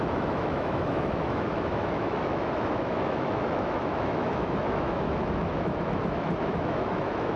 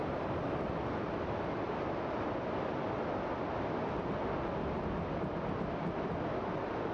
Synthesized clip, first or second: first